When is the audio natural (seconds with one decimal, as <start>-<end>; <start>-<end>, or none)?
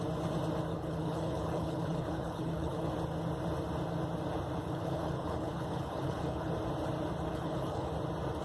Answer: 0.0-0.7; 2.9-4.6; 6.5-7.3; 7.9-8.4